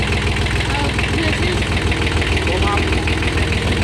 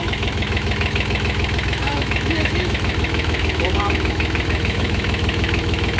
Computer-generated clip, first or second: second